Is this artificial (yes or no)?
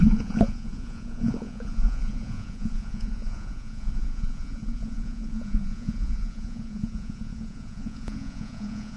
yes